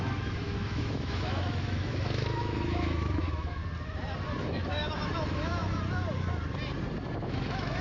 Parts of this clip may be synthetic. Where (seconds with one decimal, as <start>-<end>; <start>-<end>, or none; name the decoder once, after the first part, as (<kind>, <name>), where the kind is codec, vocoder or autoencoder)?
0.0-3.6 (autoencoder, DAC-VAE); 4.4-5.6; 7.2-7.8